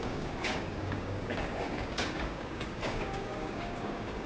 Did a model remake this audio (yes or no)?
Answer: yes